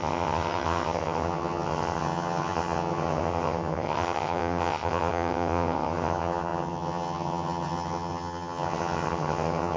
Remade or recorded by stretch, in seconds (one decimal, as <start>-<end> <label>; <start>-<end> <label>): 0.0-9.8 remade